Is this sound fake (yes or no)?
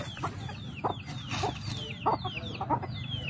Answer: no